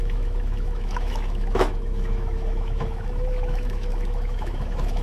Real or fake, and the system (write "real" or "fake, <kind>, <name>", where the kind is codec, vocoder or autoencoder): fake, autoencoder, DAC-VAE